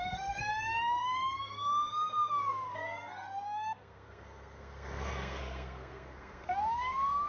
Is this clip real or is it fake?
fake